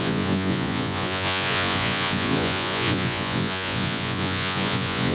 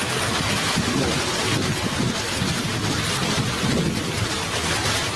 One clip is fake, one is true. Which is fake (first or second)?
first